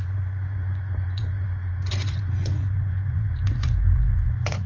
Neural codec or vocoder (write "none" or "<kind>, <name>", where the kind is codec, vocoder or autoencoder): vocoder, Vocos